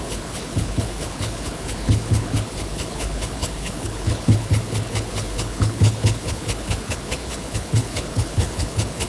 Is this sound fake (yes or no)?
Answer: yes